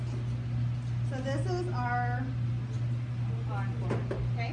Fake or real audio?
real